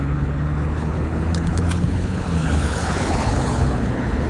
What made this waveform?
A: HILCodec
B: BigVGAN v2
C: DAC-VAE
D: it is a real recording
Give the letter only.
A